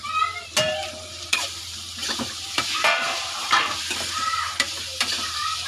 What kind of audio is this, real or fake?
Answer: fake